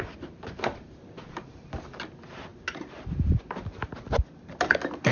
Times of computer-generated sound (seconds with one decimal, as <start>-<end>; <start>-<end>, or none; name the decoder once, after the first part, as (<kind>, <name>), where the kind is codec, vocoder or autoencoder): none